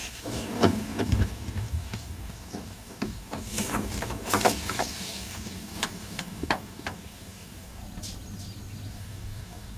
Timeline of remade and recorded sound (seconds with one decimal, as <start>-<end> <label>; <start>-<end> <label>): 0.0-7.8 remade; 7.8-8.9 recorded; 8.9-9.8 remade